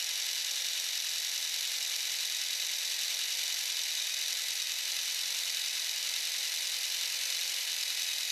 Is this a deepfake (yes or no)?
no